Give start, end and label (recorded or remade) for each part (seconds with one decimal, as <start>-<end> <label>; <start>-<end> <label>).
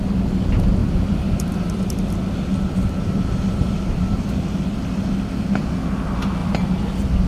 0.0-7.3 recorded